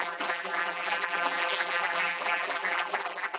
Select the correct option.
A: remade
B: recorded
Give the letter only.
A